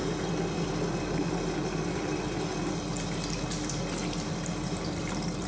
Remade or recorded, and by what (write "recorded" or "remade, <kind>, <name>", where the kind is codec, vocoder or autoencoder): recorded